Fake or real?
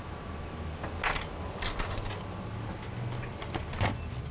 real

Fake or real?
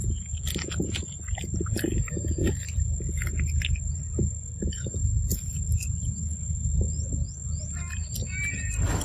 real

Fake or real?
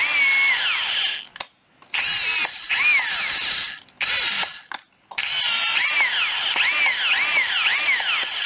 real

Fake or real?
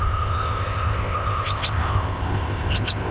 fake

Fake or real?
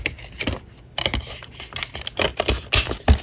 real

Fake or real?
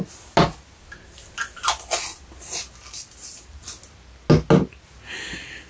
real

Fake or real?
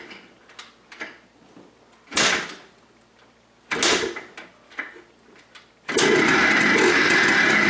real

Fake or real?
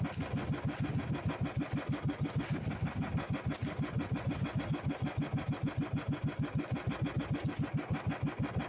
real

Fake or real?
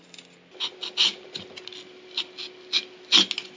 real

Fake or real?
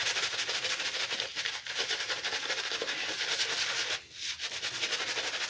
fake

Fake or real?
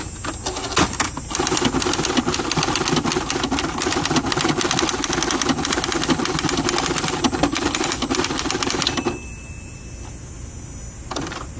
real